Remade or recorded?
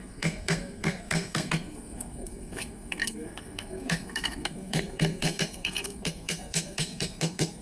remade